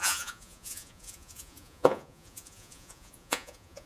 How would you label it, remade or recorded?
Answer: remade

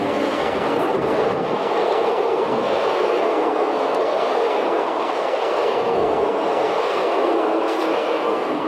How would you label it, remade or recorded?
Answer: remade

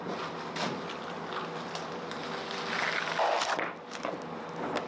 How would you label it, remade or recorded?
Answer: recorded